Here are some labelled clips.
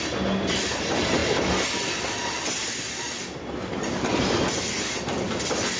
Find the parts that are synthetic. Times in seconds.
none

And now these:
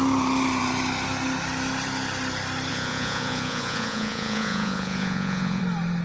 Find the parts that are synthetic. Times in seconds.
2.7-5.6 (vocoder, Vocos)

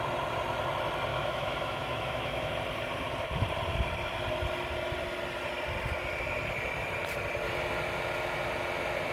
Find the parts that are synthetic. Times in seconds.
1.1-2.5 (autoencoder, DAC-VAE)